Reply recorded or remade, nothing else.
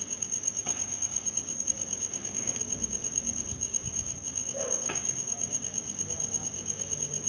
remade